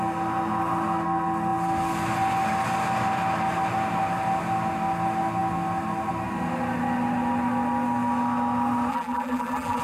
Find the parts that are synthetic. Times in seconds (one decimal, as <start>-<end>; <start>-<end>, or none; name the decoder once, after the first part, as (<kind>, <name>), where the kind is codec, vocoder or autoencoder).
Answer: 8.9-9.8 (vocoder, BigVGAN v2)